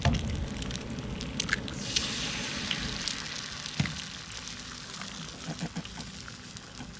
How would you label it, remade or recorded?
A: recorded